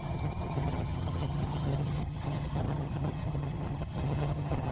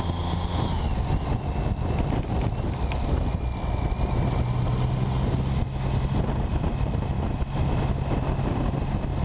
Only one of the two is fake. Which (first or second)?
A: first